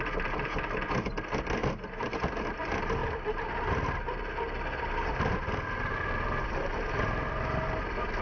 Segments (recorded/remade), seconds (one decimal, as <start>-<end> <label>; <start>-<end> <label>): 0.0-1.6 recorded; 1.6-2.2 remade; 2.2-3.0 recorded; 3.0-3.7 remade; 3.7-8.2 recorded